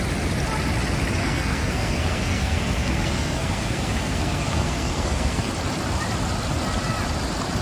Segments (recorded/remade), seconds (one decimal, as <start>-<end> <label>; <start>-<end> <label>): 0.0-1.2 recorded; 1.2-5.5 remade; 5.5-7.6 recorded